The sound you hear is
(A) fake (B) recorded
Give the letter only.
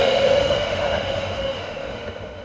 A